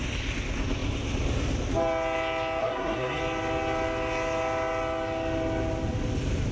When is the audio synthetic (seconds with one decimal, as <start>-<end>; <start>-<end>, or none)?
2.6-3.2